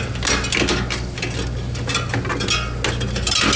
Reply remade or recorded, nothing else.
recorded